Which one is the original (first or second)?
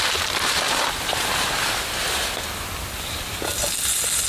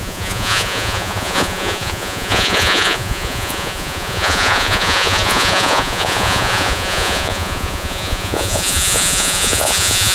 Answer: first